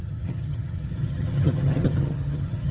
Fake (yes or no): yes